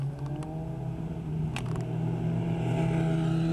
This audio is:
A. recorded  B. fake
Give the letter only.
A